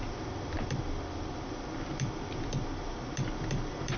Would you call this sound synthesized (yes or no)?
no